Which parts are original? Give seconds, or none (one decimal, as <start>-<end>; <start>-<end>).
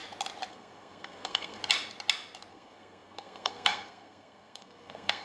0.0-0.5; 1.6-2.5